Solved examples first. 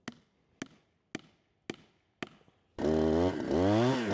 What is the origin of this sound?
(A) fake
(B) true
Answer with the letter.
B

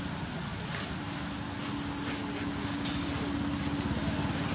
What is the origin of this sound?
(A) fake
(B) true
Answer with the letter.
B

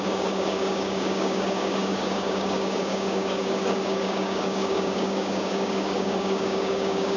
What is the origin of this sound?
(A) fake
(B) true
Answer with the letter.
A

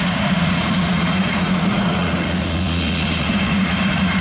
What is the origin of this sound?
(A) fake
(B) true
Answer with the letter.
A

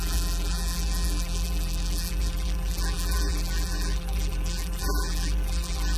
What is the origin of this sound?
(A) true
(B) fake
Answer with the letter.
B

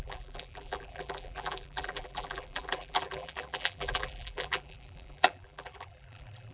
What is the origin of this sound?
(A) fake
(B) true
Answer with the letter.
A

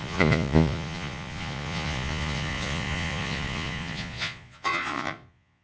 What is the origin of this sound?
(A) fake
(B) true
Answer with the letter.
A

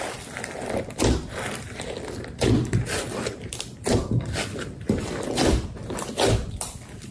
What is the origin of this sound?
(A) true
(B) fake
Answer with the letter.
A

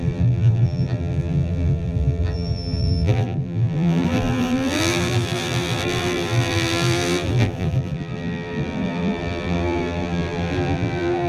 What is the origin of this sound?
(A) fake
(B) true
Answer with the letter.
A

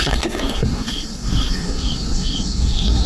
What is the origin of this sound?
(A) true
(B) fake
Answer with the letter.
B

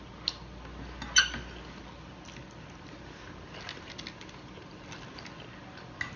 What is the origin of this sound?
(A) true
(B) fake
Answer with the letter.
A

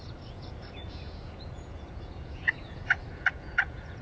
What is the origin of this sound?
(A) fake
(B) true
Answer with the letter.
A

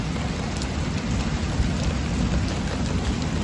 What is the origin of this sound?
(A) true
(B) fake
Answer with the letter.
A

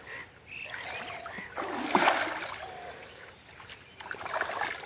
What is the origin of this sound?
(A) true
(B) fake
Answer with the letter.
A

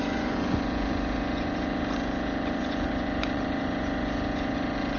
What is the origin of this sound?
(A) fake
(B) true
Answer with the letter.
A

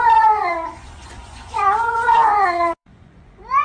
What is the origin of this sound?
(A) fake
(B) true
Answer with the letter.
A